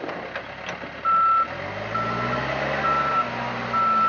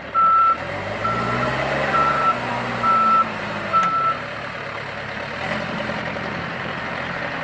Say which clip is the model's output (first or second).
second